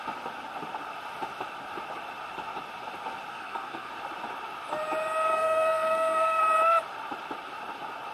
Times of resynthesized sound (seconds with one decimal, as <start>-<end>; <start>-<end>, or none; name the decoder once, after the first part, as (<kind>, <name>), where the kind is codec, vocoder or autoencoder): 3.3-3.9 (codec, SNAC); 5.3-6.4